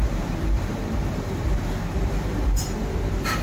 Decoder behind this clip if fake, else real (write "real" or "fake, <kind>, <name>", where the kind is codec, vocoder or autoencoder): fake, vocoder, BigVGAN v2